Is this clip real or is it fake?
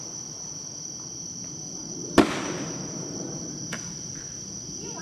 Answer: real